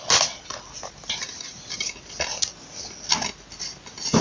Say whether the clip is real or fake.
real